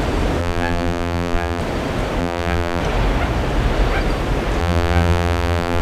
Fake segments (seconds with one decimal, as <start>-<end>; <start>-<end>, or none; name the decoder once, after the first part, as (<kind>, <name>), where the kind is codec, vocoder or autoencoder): 0.4-1.6 (vocoder, BigVGAN v2); 2.2-2.8; 4.6-5.8